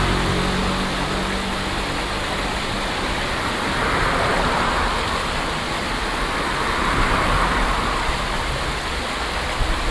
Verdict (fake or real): real